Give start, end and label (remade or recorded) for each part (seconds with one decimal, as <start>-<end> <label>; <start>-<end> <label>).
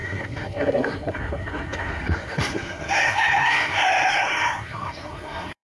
0.0-5.6 remade